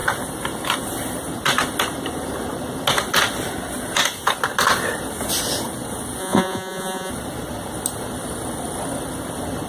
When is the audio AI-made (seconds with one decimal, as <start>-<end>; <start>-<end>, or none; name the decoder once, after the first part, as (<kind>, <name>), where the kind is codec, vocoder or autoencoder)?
6.2-7.1 (vocoder, Vocos)